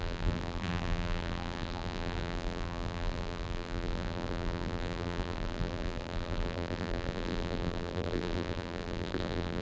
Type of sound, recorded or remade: remade